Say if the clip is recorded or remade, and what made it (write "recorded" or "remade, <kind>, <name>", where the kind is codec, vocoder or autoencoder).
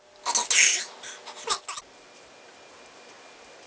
recorded